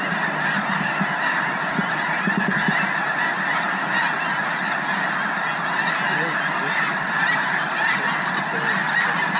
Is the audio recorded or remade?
recorded